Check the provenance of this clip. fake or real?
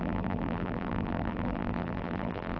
fake